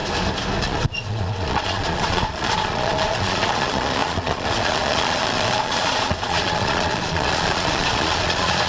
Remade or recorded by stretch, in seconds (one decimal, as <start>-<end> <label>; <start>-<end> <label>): 0.0-0.6 recorded; 0.6-8.7 remade